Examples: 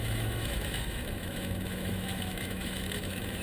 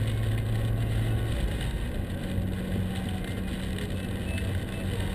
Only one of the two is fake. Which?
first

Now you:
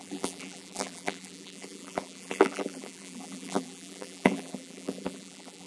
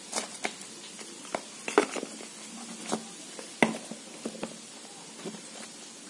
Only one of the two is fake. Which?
first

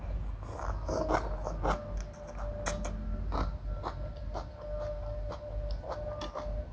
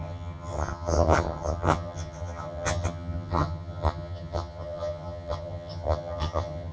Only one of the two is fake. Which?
second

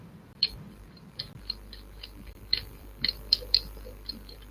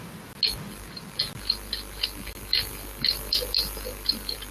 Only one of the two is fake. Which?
first